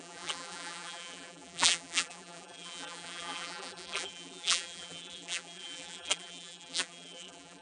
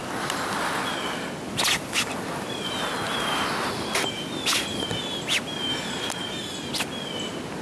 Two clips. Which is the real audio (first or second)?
second